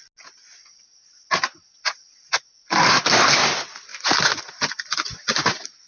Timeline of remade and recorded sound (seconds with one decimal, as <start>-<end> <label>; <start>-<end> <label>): 0.0-5.9 recorded